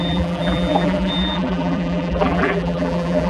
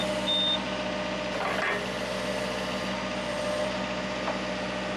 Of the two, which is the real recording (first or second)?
second